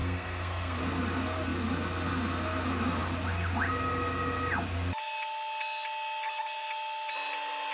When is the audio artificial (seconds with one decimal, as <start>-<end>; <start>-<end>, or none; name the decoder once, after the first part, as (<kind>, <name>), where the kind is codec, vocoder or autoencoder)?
0.0-0.8 (codec, SNAC)